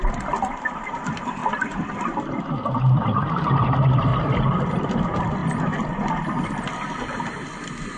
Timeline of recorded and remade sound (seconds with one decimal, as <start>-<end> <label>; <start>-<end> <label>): 0.0-1.4 remade; 1.4-2.4 recorded; 2.4-4.1 remade; 4.1-4.7 recorded; 4.7-5.4 remade; 5.4-7.0 recorded; 7.0-8.0 remade